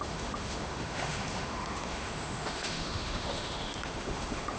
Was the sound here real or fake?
fake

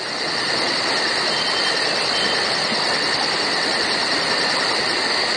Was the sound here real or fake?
real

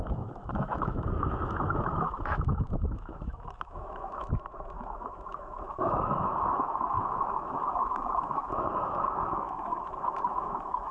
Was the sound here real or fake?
fake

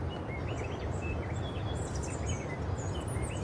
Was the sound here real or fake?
real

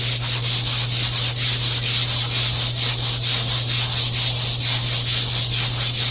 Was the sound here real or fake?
real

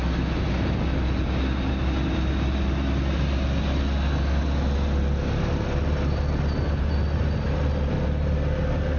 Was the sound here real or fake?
real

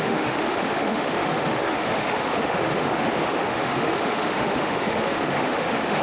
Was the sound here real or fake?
fake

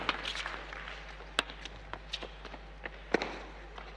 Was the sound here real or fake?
real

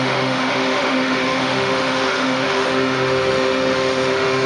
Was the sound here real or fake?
fake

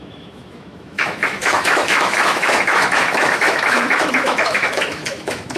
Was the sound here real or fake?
fake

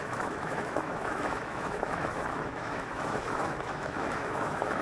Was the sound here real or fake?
fake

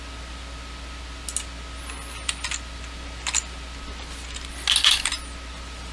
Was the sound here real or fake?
real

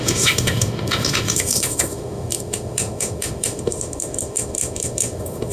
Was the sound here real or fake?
fake